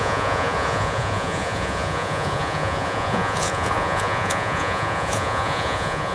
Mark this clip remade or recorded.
remade